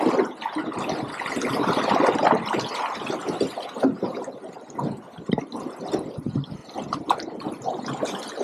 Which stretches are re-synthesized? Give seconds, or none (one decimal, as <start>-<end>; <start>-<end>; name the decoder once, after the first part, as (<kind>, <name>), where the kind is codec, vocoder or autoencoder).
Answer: 6.6-7.8 (vocoder, BigVGAN v2)

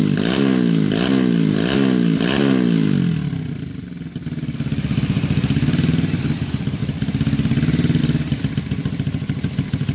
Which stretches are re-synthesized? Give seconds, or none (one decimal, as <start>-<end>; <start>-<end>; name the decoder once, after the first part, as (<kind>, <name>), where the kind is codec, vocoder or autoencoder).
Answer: 6.8-8.0 (vocoder, BigVGAN v2)

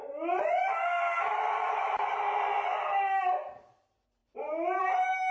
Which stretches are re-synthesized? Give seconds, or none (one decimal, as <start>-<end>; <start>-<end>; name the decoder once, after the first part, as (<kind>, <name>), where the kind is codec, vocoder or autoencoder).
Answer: none

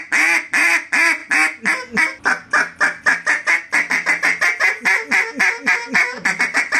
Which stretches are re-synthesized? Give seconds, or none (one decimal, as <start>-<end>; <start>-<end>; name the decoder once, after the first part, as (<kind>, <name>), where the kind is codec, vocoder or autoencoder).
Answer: none

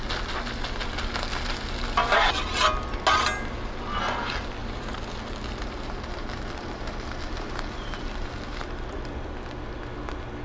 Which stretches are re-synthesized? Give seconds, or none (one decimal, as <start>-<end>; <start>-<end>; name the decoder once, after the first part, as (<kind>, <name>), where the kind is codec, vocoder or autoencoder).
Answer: 4.6-9.3 (vocoder, BigVGAN v2)

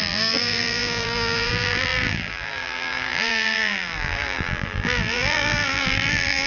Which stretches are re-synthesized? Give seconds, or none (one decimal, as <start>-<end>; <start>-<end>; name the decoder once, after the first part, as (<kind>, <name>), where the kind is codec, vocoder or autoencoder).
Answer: 0.0-6.5 (vocoder, BigVGAN v2)

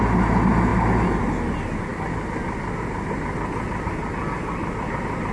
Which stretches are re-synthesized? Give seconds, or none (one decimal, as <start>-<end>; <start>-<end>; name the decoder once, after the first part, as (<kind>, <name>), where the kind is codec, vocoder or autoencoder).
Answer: none